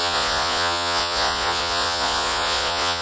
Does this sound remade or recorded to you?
remade